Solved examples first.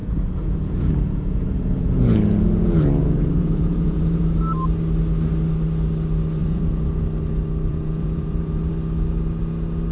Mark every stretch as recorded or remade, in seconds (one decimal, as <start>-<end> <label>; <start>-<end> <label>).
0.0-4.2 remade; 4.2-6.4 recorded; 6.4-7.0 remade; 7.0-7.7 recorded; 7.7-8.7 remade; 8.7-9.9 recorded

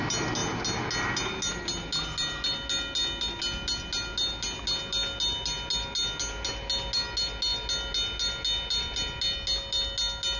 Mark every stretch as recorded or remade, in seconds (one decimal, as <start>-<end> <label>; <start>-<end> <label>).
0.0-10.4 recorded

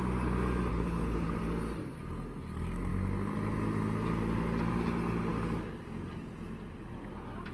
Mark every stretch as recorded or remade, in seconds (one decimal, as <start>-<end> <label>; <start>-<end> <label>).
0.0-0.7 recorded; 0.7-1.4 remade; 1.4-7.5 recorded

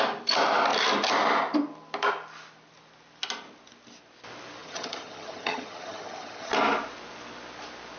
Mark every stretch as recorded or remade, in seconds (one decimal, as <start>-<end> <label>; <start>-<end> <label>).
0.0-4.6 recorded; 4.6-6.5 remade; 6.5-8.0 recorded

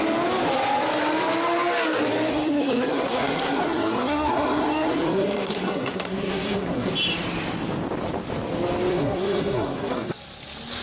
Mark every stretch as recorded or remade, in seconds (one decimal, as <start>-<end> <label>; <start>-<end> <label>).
0.0-2.3 recorded; 2.3-6.9 remade; 6.9-8.9 recorded; 8.9-10.2 remade; 10.2-10.8 recorded

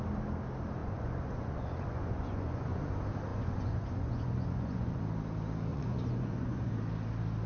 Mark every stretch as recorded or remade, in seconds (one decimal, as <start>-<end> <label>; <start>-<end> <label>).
0.0-0.8 recorded; 0.8-2.8 remade; 2.8-3.3 recorded; 3.3-5.0 remade; 5.0-5.7 recorded; 5.7-6.7 remade; 6.7-7.5 recorded

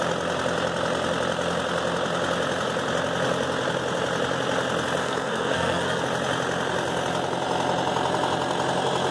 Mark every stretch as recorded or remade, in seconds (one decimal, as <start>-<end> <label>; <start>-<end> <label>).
0.0-5.0 recorded; 5.0-6.0 remade; 6.0-9.1 recorded

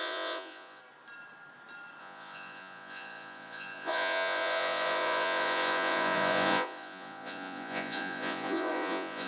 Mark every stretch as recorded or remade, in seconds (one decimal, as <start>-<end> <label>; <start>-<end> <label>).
0.0-0.8 remade; 0.8-2.0 recorded; 2.0-9.3 remade